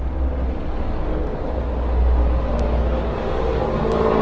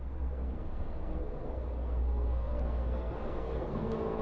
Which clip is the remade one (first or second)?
second